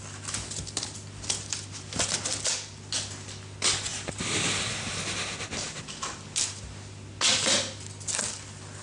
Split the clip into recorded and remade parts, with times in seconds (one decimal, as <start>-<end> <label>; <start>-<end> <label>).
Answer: 0.0-3.9 recorded; 3.9-5.0 remade; 5.0-8.8 recorded